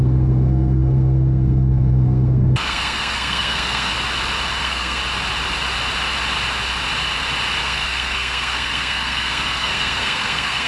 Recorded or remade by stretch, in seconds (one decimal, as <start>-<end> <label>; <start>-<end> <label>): 0.0-3.9 remade; 3.9-4.6 recorded; 4.6-5.0 remade; 5.0-7.6 recorded; 7.6-10.7 remade